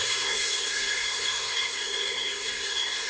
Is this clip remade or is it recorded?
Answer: remade